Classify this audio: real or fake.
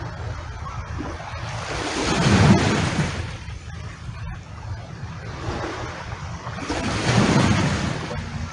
real